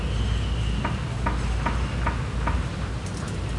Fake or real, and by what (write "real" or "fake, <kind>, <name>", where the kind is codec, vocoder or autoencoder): real